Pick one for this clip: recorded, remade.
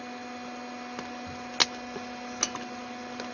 recorded